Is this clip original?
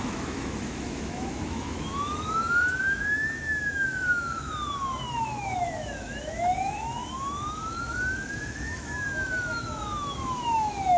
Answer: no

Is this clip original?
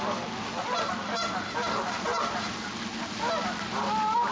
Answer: yes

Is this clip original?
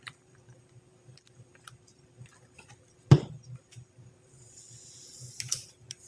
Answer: yes